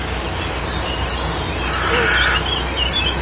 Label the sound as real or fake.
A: real